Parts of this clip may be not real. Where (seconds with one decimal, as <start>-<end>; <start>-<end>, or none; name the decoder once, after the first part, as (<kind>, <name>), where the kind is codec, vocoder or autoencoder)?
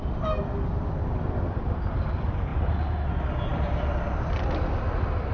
none